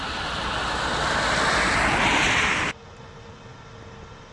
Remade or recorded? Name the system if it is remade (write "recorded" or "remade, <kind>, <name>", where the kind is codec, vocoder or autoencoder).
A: remade, vocoder, BigVGAN v2